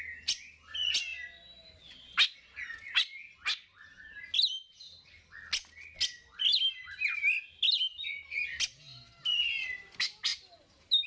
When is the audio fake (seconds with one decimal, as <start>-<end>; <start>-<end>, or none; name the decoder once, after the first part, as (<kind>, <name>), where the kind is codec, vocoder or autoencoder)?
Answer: none